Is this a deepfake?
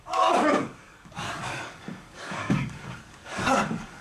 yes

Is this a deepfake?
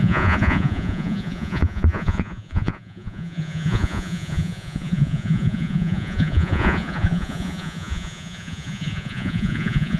yes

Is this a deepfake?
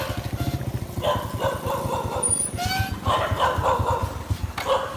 no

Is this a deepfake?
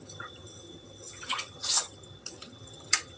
yes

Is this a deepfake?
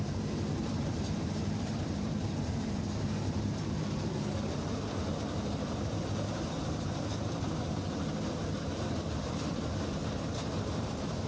yes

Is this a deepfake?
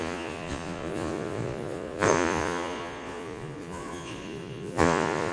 yes